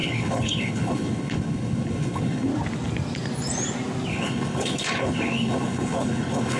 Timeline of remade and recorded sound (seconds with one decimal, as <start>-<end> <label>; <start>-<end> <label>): 0.0-2.5 remade; 2.5-4.1 recorded; 4.1-6.6 remade